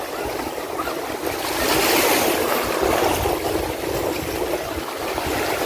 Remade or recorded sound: recorded